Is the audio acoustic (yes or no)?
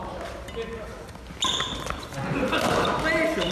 yes